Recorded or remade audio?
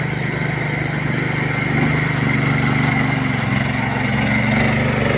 recorded